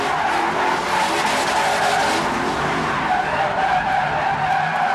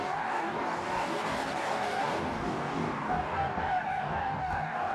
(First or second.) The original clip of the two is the first